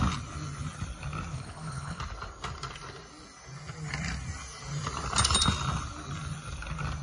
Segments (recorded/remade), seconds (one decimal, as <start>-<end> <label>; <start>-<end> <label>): 0.0-1.3 recorded; 1.3-2.0 remade; 2.0-7.0 recorded